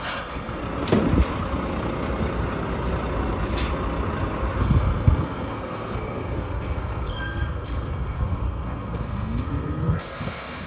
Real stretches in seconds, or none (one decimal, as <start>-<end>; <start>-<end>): 0.6-4.6